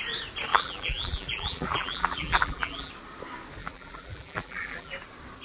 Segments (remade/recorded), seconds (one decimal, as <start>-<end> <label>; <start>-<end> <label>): 0.0-0.5 recorded; 0.5-2.9 remade; 2.9-3.6 recorded; 3.6-4.9 remade; 4.9-5.4 recorded